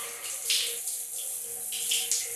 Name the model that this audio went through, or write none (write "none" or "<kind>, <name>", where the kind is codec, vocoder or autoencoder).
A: none